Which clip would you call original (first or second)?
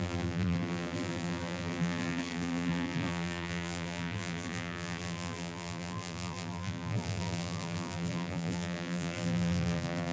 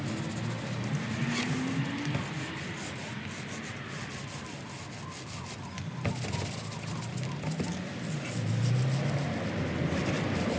second